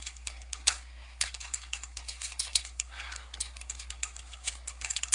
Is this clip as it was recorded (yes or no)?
no